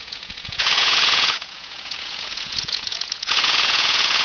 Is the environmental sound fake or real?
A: fake